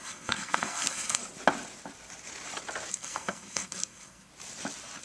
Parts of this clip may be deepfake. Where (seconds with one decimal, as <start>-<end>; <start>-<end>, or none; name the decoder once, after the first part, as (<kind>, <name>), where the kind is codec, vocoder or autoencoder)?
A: 0.0-1.2 (codec, SNAC); 2.9-4.3